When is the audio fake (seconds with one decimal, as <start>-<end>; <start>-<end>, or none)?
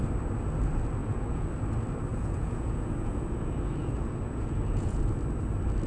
1.0-1.5; 2.1-5.0